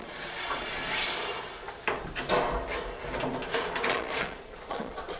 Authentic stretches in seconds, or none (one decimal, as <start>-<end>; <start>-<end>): 0.8-3.9